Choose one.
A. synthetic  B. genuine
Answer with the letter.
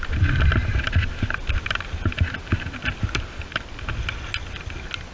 B